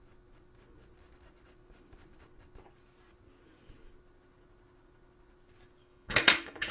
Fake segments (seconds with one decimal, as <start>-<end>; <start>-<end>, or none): 5.8-6.7